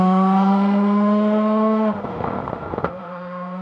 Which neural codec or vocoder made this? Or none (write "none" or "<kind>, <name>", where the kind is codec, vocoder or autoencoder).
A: autoencoder, DAC-VAE